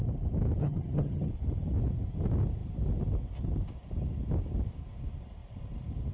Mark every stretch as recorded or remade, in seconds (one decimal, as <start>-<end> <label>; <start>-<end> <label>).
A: 0.0-0.6 recorded; 0.6-1.3 remade; 1.3-6.1 recorded

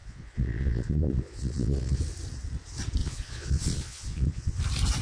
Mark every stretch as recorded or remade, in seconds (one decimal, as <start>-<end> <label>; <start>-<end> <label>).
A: 0.0-2.0 remade; 2.0-3.0 recorded; 3.0-4.6 remade; 4.6-5.0 recorded

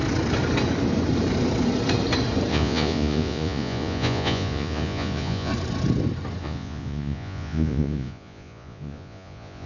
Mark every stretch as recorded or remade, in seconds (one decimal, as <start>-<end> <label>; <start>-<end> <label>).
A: 0.0-2.5 recorded; 2.5-5.5 remade; 5.5-6.4 recorded; 6.4-9.7 remade

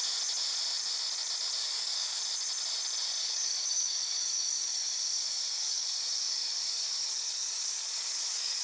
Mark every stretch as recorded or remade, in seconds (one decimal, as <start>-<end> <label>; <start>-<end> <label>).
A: 0.0-1.6 recorded; 1.6-2.2 remade; 2.2-3.2 recorded; 3.2-8.6 remade